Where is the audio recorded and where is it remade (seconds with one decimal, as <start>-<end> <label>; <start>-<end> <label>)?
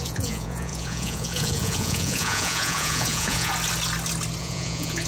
0.0-3.5 remade; 3.5-4.4 recorded; 4.4-5.1 remade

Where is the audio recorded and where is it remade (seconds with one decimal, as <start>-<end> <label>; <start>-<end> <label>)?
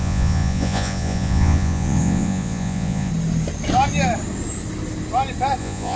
0.0-3.1 remade; 3.1-5.6 recorded; 5.6-6.0 remade